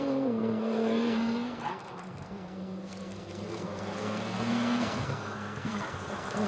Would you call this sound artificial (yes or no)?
yes